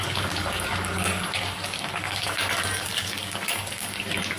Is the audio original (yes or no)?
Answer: no